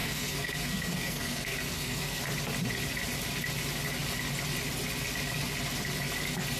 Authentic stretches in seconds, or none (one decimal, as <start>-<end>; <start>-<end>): 2.2-6.6